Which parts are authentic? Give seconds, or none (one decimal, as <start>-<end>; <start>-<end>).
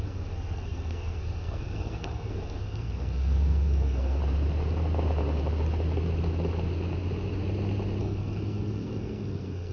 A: 4.2-8.0